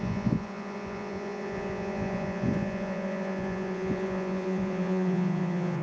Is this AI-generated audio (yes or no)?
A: yes